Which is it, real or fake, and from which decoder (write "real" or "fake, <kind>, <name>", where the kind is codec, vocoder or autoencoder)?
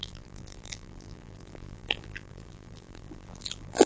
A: fake, vocoder, BigVGAN v2